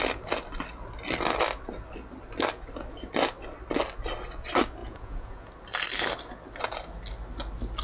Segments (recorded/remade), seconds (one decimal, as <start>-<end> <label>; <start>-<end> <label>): 0.0-4.8 recorded; 4.8-5.5 remade; 5.5-7.8 recorded